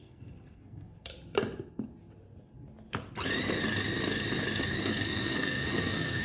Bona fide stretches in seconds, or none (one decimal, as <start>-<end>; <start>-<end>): 1.1-4.8